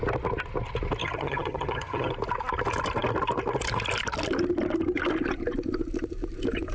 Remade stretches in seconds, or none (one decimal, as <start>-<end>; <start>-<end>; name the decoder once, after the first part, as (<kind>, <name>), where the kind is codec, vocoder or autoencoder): 1.0-2.1 (vocoder, HiFi-GAN)